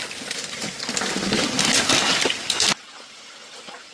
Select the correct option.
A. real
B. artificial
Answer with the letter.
A